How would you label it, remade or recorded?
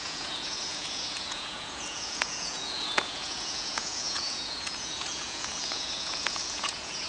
remade